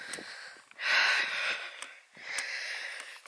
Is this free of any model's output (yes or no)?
yes